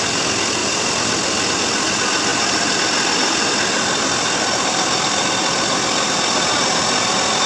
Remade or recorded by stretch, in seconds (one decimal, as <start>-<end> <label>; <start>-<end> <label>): 0.0-7.5 recorded